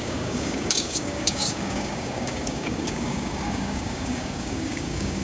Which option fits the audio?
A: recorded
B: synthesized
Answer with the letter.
B